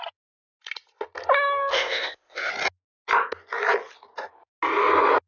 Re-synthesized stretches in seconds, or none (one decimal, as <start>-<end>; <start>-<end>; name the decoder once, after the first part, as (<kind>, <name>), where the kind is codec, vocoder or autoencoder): 1.7-2.5 (codec, ZipCodec)